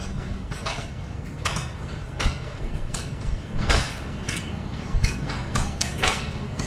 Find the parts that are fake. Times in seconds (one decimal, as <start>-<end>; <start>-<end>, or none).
0.0-6.7